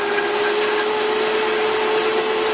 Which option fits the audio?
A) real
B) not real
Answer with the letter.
A